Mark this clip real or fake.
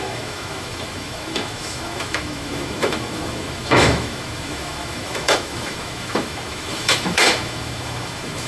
fake